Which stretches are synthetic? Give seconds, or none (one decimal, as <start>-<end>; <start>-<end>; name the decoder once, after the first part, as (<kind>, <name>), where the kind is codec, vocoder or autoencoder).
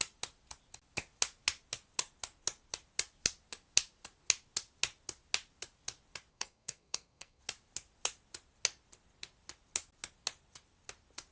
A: 6.3-7.4 (codec, SNAC)